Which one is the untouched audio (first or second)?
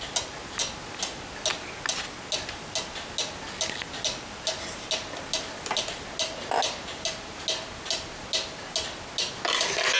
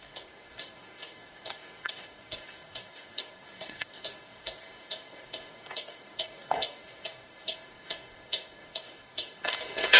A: first